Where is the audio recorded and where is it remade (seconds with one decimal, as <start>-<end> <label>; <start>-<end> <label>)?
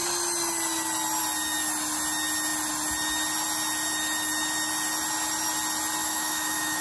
0.0-6.0 recorded; 6.0-6.8 remade